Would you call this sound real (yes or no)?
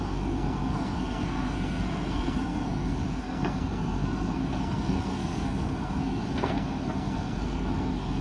no